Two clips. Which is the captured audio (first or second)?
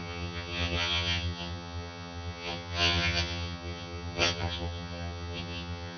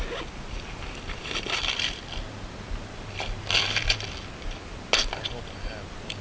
second